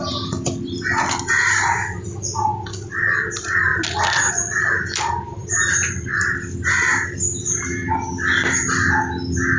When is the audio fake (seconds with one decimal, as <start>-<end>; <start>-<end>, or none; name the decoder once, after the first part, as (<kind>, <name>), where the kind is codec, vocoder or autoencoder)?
none